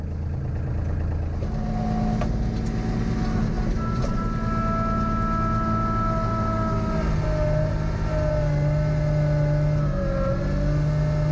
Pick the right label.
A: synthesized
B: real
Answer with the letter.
B